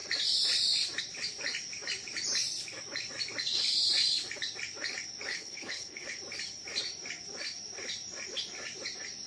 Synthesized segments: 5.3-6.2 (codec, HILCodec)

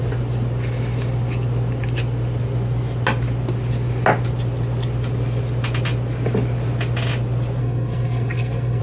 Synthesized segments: 7.6-8.8 (codec, SNAC)

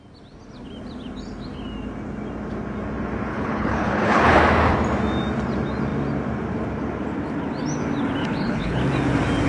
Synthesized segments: 3.3-4.4 (codec, HILCodec); 8.2-8.8

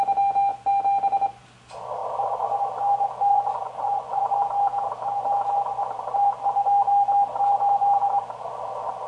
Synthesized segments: 3.3-4.2 (vocoder, Vocos)